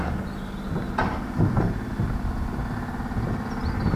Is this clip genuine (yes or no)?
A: yes